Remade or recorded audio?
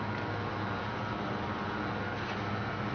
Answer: recorded